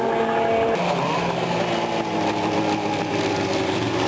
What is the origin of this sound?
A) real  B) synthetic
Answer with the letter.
A